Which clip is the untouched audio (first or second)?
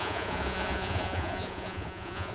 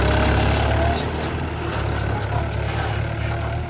second